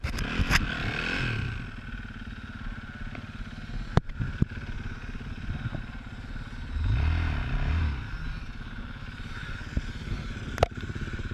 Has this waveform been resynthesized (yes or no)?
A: no